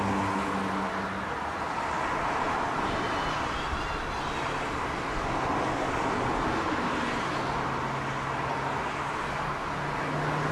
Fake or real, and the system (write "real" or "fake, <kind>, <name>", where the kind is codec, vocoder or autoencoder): real